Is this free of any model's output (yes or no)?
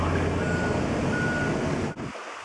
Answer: yes